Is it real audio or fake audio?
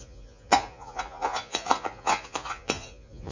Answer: fake